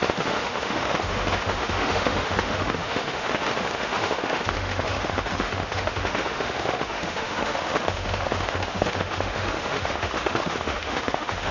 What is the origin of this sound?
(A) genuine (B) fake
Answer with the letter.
B